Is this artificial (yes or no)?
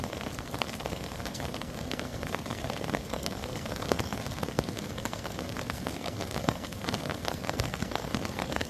yes